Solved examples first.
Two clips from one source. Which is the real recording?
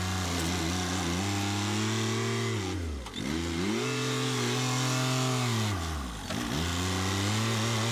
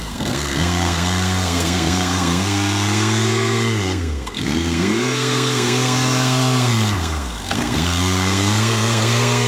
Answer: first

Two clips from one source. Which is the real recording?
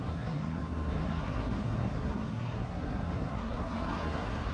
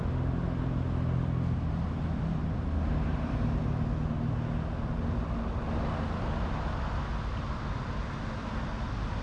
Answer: second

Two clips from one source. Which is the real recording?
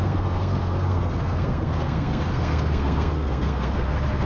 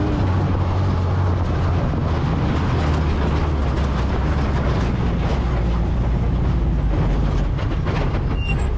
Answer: second